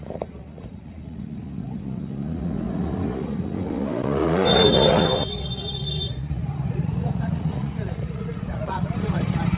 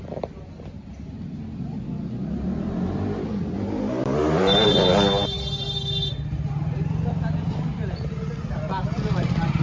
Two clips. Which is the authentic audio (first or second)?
second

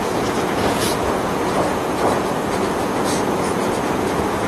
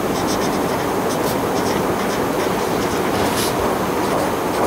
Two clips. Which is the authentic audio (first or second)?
second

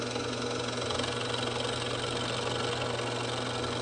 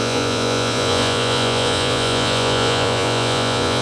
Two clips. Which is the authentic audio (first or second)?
first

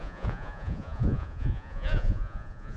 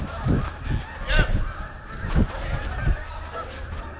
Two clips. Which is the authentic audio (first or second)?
second